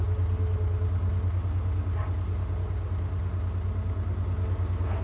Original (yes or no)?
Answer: yes